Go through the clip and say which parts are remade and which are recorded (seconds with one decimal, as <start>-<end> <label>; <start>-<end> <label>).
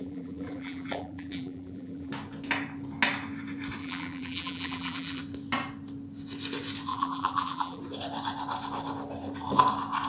0.0-2.1 remade; 2.1-3.8 recorded; 3.8-5.2 remade; 5.2-6.9 recorded; 6.9-7.8 remade; 7.8-10.1 recorded